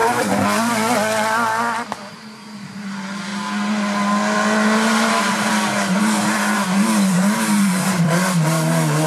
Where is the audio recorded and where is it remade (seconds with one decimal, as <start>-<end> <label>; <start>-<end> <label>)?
0.0-0.7 recorded; 0.7-3.3 remade; 3.3-5.1 recorded; 5.1-9.1 remade